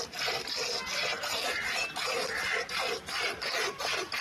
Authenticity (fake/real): real